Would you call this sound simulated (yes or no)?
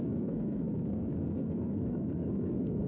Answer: yes